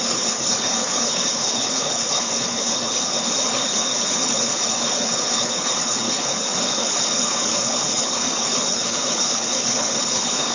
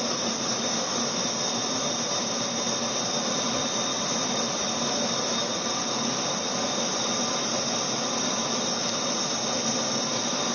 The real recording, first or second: second